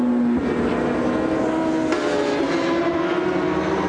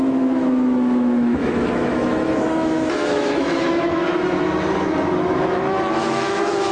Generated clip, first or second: second